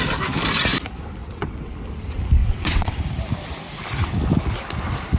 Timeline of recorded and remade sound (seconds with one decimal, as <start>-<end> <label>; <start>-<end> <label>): 0.0-1.2 recorded; 1.2-1.7 remade; 1.7-2.4 recorded; 2.4-3.0 remade; 3.0-5.2 recorded